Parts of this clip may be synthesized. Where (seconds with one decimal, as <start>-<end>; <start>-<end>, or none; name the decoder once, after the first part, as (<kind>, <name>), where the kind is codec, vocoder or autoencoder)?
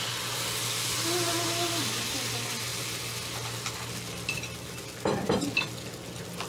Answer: none